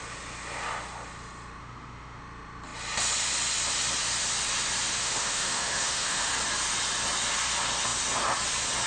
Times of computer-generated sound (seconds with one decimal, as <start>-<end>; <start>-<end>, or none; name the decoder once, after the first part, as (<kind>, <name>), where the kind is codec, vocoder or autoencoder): 1.6-2.2 (autoencoder, DAC-VAE); 5.0-6.3